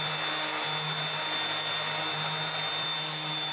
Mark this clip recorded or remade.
recorded